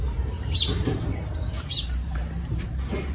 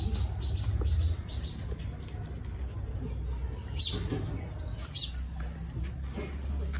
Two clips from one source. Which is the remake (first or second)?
first